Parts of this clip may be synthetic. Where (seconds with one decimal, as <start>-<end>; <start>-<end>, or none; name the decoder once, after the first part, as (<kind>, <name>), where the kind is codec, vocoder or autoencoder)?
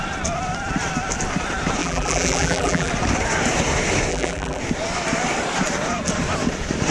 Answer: 1.8-2.9 (vocoder, BigVGAN v2); 4.1-4.6